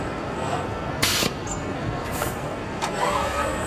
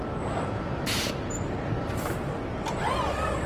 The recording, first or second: second